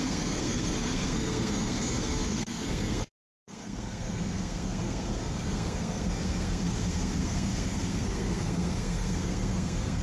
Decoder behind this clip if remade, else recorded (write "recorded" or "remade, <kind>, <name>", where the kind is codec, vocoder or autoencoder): remade, codec, SNAC